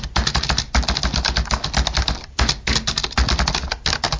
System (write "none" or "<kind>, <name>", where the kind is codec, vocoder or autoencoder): none